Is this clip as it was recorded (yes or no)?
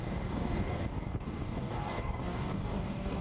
no